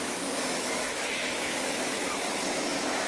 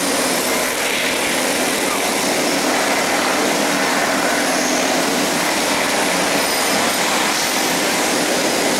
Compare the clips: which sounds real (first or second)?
second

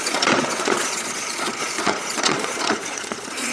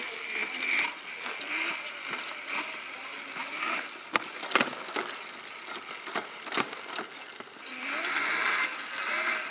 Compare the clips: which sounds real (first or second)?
second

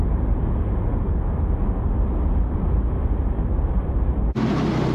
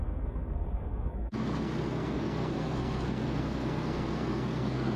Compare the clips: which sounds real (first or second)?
first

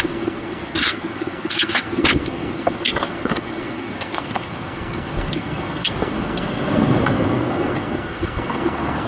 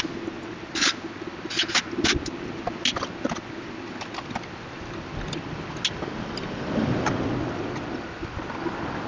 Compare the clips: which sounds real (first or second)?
second